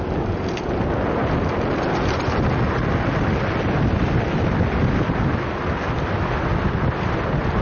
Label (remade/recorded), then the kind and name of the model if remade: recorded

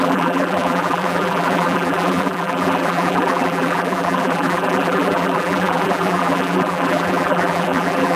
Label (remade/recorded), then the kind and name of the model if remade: remade, vocoder, BigVGAN v2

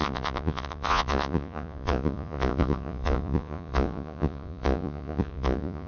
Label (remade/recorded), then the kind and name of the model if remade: remade, vocoder, Vocos